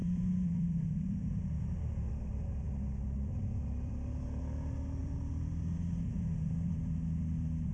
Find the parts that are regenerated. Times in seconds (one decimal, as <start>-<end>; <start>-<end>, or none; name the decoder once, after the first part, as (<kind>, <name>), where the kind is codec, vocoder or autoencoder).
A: 0.0-3.9 (vocoder, BigVGAN v2); 5.0-6.8